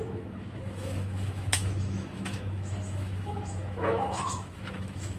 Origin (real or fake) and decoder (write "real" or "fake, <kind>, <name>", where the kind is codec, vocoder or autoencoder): fake, autoencoder, DAC-VAE